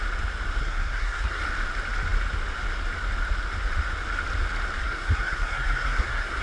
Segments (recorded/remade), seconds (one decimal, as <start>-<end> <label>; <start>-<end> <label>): 0.0-0.6 recorded; 0.6-1.4 remade; 1.4-4.8 recorded; 4.8-6.4 remade